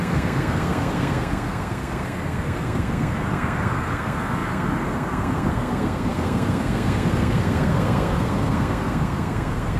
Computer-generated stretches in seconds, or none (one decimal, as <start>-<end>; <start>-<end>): 0.0-9.8